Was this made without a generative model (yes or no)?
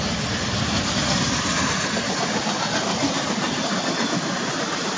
yes